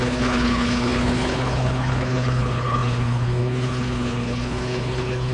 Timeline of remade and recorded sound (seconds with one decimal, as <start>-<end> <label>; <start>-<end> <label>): 0.0-5.3 remade